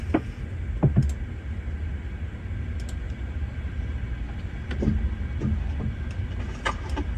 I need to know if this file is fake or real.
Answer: real